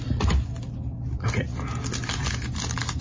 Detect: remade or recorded recorded